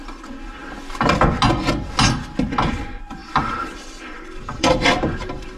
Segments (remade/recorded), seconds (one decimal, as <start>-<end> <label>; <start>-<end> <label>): 0.0-3.2 recorded; 3.2-4.7 remade; 4.7-5.6 recorded